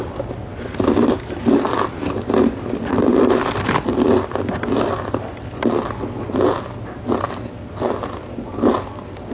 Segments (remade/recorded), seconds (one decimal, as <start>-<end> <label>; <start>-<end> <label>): 0.0-0.5 recorded; 0.5-1.4 remade; 1.4-8.2 recorded; 8.2-8.7 remade; 8.7-9.3 recorded